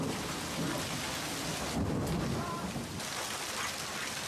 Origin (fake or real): real